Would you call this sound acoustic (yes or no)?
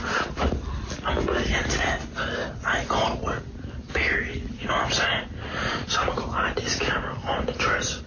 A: yes